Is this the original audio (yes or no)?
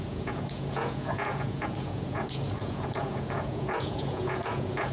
no